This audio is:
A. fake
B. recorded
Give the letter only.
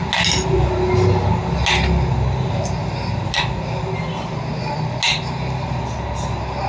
B